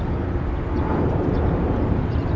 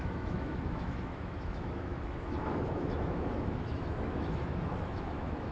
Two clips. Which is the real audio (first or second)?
first